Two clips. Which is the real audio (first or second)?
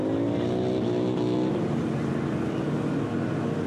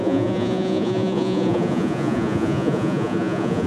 first